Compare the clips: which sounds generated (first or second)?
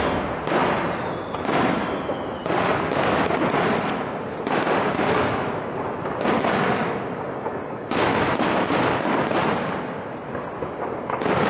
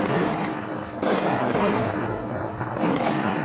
second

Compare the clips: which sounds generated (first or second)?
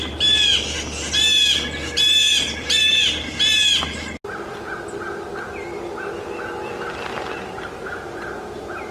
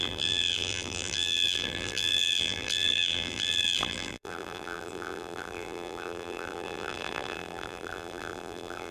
second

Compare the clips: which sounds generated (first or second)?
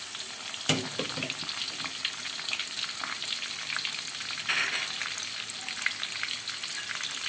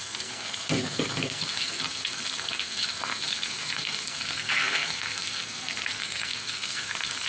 second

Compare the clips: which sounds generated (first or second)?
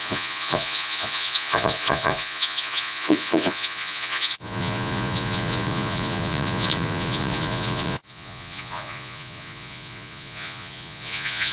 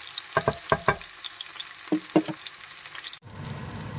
first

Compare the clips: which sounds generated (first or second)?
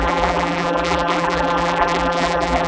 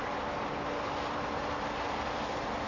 first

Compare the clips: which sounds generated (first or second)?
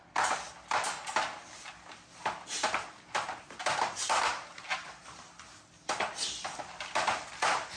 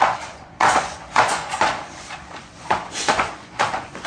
second